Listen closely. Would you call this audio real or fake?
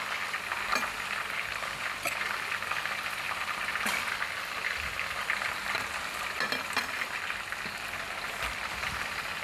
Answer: real